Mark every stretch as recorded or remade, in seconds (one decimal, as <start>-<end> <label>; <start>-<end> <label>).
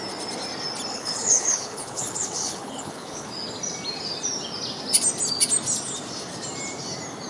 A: 0.0-0.9 recorded; 0.9-3.3 remade; 3.3-7.3 recorded